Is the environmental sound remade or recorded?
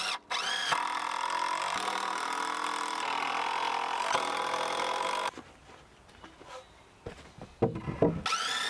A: recorded